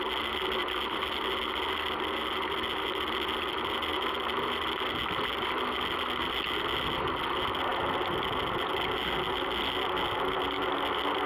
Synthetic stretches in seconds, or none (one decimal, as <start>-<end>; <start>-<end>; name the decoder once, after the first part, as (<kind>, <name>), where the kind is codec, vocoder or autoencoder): none